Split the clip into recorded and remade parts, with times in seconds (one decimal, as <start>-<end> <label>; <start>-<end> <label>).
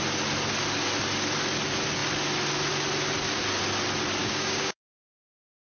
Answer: 0.0-4.2 recorded; 4.2-5.1 remade; 5.1-5.6 recorded